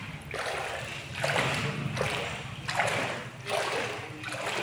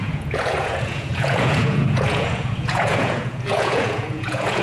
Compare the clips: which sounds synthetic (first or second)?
second